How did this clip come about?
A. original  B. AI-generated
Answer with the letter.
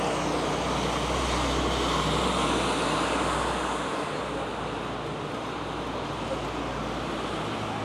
A